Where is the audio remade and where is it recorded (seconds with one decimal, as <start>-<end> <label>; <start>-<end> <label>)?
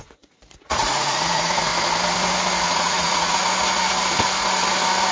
0.0-1.7 remade; 1.7-2.6 recorded; 2.6-3.4 remade; 3.4-5.1 recorded